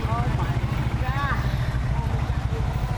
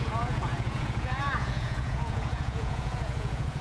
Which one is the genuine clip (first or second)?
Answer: first